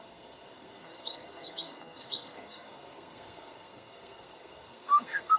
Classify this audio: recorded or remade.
remade